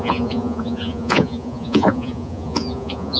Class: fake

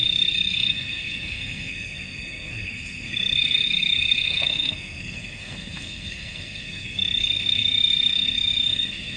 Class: fake